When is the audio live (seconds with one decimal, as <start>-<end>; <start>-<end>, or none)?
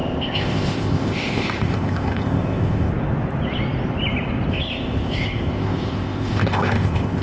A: 2.9-4.5